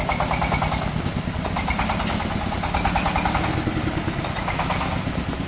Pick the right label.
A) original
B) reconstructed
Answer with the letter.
A